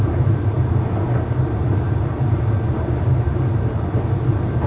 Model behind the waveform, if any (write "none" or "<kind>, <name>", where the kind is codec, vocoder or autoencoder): vocoder, BigVGAN v2